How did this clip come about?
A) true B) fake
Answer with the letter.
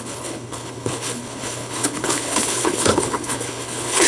B